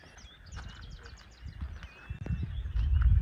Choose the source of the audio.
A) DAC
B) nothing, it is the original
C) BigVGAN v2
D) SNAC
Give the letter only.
B